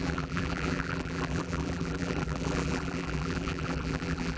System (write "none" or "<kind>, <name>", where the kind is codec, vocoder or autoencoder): vocoder, BigVGAN v2